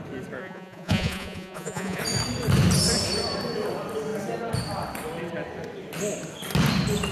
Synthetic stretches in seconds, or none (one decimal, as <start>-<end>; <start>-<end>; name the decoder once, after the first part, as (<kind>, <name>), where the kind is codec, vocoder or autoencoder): 0.4-2.0 (vocoder, Vocos)